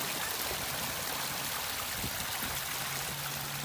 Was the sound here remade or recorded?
recorded